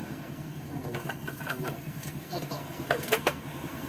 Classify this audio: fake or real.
fake